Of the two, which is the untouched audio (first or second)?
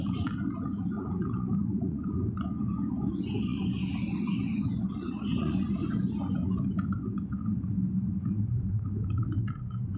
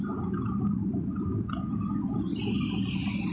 second